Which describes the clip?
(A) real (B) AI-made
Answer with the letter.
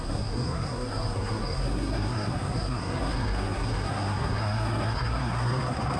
B